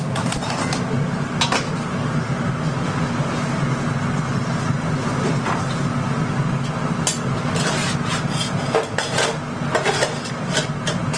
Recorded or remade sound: recorded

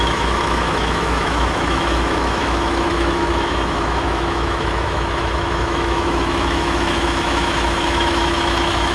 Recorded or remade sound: remade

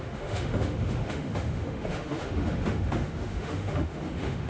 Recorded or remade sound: remade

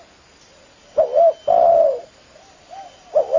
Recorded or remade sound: recorded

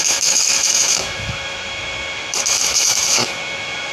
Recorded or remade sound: remade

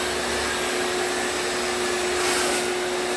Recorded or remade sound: recorded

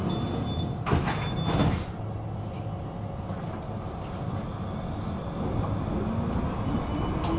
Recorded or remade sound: recorded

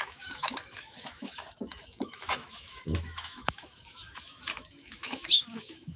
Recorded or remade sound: remade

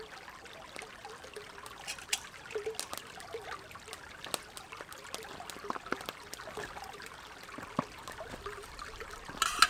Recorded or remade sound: recorded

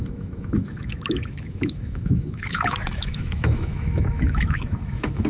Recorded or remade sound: remade